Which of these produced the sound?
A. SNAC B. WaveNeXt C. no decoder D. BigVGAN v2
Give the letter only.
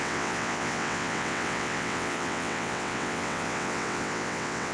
B